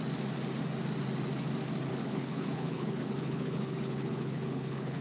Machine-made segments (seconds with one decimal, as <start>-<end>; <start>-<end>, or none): 1.9-5.0